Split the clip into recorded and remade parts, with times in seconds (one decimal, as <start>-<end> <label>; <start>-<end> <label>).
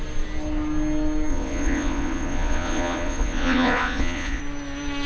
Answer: 0.0-1.3 recorded; 1.3-4.4 remade; 4.4-5.1 recorded